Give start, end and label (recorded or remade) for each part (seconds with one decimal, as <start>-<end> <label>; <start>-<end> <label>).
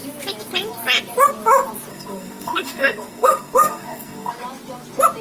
0.0-1.9 recorded; 1.9-4.3 remade; 4.3-5.2 recorded